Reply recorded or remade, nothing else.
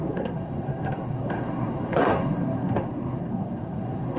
remade